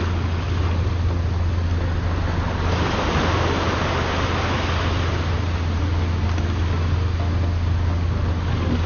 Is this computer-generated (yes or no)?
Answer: no